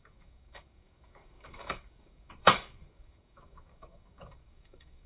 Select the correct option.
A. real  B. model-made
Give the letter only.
B